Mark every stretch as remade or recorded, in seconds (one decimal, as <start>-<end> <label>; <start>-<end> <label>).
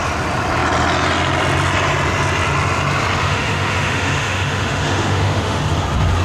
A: 0.0-3.2 recorded; 3.2-5.6 remade; 5.6-6.2 recorded